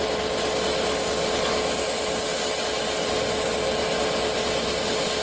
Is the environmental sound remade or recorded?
recorded